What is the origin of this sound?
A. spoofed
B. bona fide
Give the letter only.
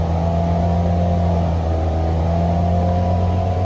B